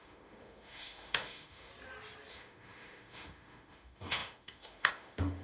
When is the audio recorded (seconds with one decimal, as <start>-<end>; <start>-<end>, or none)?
1.7-2.3